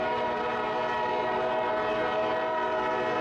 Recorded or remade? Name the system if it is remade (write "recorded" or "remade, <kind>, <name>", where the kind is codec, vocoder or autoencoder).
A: recorded